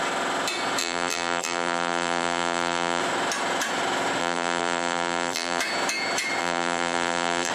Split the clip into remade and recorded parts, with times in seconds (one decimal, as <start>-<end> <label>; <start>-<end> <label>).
0.0-0.8 recorded; 0.8-3.0 remade; 3.0-4.2 recorded; 4.2-5.6 remade; 5.6-6.4 recorded; 6.4-7.5 remade